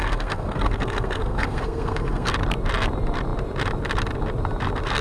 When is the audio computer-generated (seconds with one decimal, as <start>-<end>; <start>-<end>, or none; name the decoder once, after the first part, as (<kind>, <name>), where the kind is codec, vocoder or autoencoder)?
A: 0.0-2.3 (codec, SNAC)